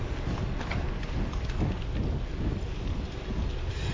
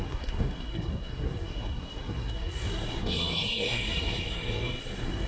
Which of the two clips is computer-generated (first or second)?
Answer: second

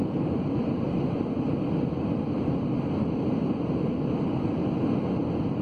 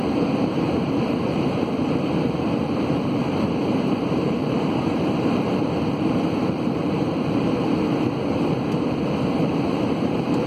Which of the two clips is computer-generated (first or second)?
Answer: second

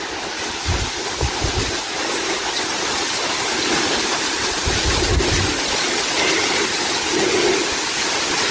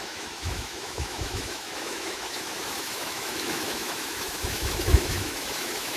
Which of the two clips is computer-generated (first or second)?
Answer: second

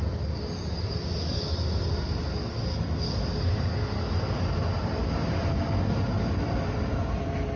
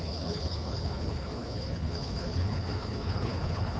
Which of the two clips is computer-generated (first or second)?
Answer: second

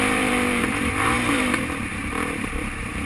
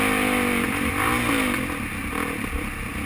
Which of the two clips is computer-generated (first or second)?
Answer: first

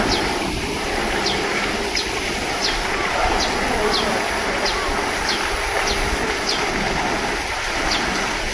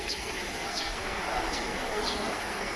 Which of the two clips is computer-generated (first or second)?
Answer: second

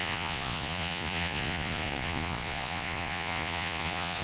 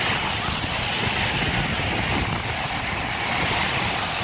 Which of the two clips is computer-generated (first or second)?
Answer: first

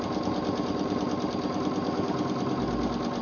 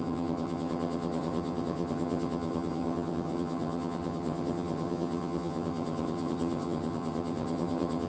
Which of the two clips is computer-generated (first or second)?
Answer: second